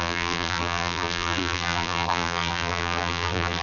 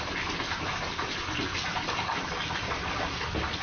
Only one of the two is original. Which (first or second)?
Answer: second